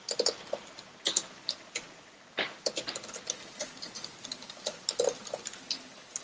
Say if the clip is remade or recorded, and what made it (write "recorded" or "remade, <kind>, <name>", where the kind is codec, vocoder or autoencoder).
recorded